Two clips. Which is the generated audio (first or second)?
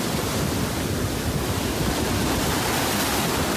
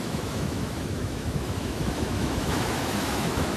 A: second